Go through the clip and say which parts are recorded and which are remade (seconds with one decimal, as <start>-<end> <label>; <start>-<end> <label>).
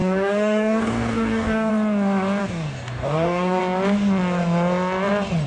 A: 0.0-1.7 remade; 1.7-2.4 recorded; 2.4-3.6 remade; 3.6-5.5 recorded